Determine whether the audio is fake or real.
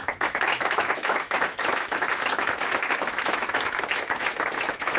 fake